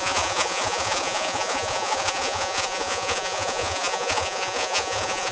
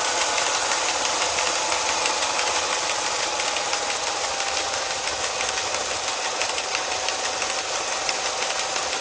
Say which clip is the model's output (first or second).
first